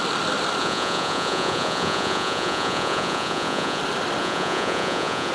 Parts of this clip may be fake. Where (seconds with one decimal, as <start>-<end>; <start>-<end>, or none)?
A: 0.6-3.8; 4.2-5.3